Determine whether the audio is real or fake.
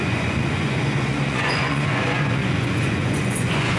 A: fake